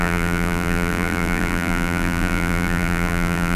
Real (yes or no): no